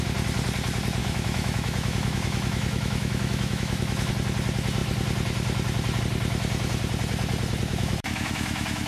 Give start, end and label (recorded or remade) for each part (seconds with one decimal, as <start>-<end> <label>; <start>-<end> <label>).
0.0-1.0 recorded; 1.0-4.1 remade; 4.1-7.7 recorded; 7.7-8.9 remade